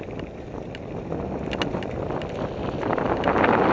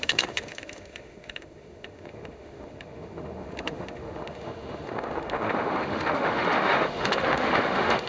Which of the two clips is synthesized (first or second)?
second